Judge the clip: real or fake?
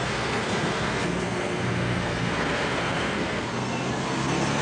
fake